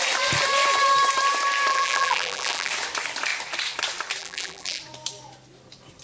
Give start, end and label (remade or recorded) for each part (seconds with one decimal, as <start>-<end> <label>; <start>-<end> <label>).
0.0-1.7 recorded; 1.7-2.7 remade; 2.7-4.2 recorded; 4.2-4.8 remade; 4.8-6.0 recorded